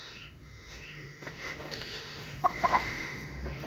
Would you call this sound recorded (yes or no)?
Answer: no